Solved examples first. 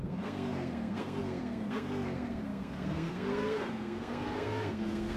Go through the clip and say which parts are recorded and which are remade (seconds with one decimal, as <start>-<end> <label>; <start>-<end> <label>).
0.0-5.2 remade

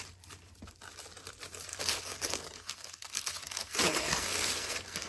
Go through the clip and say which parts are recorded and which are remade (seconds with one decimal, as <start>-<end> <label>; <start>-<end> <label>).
0.0-1.7 recorded; 1.7-5.1 remade

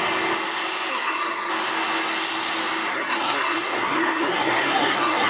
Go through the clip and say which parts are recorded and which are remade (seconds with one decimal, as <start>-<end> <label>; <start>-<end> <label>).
0.0-0.9 recorded; 0.9-1.5 remade; 1.5-2.9 recorded; 2.9-5.3 remade